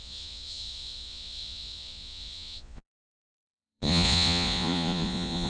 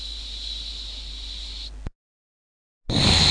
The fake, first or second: first